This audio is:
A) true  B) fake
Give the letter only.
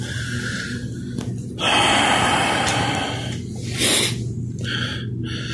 A